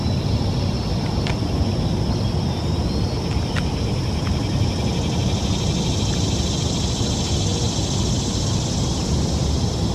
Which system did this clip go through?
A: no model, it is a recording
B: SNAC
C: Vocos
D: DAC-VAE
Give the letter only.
A